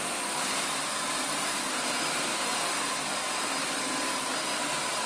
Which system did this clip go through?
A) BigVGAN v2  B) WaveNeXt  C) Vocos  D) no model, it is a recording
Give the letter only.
D